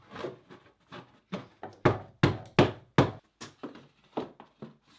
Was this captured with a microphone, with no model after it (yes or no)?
yes